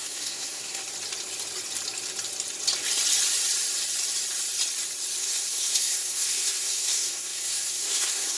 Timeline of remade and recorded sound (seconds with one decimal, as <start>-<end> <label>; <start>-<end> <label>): 0.0-0.8 remade; 0.8-5.2 recorded; 5.2-8.4 remade